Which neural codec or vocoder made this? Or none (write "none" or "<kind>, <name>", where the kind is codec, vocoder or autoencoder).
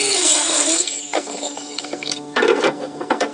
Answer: codec, SNAC